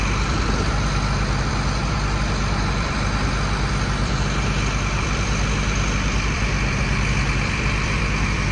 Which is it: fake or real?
fake